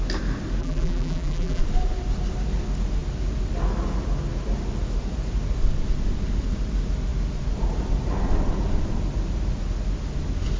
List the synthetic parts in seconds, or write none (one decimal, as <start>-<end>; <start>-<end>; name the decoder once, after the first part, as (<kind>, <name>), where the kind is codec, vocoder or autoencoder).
0.6-1.6 (vocoder, BigVGAN v2)